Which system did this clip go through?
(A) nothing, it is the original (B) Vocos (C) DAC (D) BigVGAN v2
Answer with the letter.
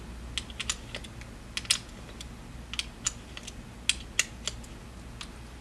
A